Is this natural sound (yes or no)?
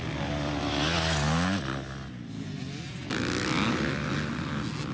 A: yes